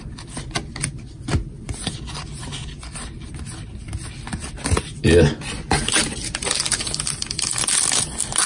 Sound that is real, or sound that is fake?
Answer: real